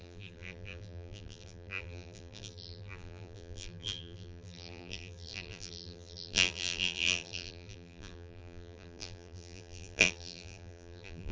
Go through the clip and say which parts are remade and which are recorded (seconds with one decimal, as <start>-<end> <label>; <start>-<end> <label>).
0.0-11.3 remade